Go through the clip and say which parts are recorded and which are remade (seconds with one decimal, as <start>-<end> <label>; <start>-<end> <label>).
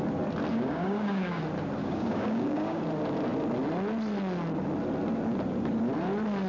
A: 0.0-0.5 recorded; 0.5-1.4 remade; 1.4-1.8 recorded; 1.8-2.8 remade; 2.8-6.5 recorded